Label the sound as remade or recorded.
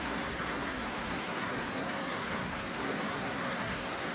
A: remade